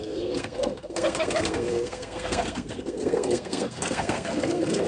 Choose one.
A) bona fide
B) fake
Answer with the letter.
B